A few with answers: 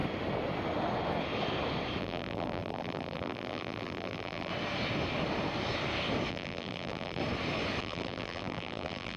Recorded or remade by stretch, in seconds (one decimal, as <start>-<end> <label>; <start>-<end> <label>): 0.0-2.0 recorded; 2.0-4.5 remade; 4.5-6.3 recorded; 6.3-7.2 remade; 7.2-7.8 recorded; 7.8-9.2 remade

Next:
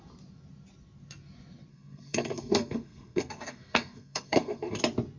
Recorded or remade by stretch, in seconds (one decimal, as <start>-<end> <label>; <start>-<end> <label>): 0.0-1.7 recorded; 1.7-4.8 remade; 4.8-5.2 recorded

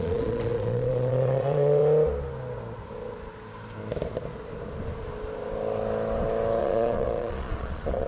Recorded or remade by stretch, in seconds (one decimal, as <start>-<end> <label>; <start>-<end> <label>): 0.0-1.8 remade; 1.8-6.6 recorded; 6.6-8.1 remade

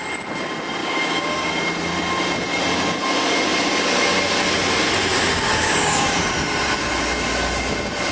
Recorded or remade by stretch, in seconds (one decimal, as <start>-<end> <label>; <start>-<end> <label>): 0.0-0.8 recorded; 0.8-1.5 remade; 1.5-5.1 recorded; 5.1-6.2 remade; 6.2-8.1 recorded